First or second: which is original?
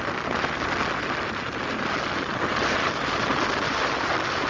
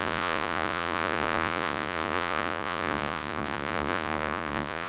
first